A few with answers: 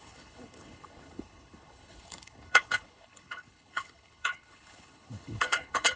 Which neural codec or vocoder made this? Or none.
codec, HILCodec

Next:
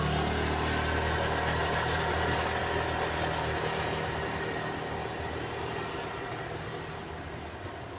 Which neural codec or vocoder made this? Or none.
none